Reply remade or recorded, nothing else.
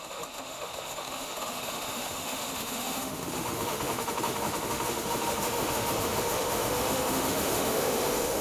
remade